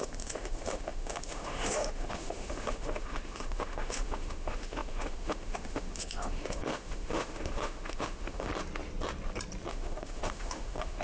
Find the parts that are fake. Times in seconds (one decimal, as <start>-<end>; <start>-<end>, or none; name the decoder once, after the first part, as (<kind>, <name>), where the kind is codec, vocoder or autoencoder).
0.0-8.5 (autoencoder, DAC-VAE); 9.7-11.0